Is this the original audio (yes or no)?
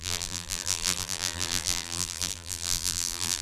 no